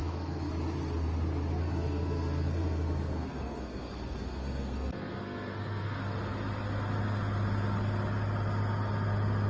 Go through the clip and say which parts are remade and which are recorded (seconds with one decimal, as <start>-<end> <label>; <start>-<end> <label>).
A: 0.0-0.5 remade; 0.5-1.6 recorded; 1.6-6.0 remade; 6.0-9.5 recorded